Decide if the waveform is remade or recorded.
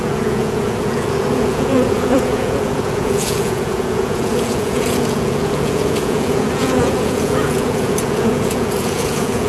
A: remade